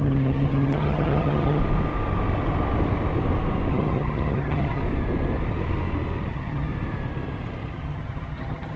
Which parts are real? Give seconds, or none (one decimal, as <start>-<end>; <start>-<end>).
1.6-3.7; 4.8-6.3; 6.7-7.7